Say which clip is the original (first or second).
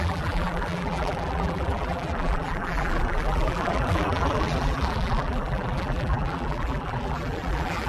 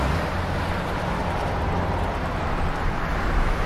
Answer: second